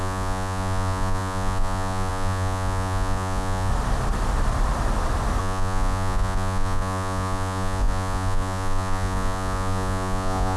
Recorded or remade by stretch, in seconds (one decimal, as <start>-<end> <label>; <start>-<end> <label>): 0.0-3.7 remade; 3.7-5.4 recorded; 5.4-10.6 remade